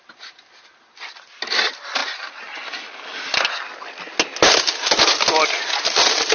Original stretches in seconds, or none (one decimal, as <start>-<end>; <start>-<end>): 2.0-5.8